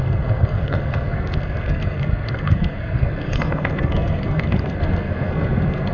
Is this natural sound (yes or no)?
no